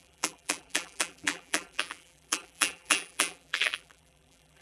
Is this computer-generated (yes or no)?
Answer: yes